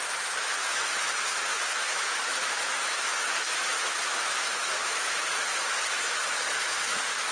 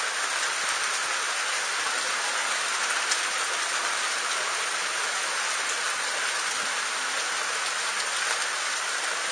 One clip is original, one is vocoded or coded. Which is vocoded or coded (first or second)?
first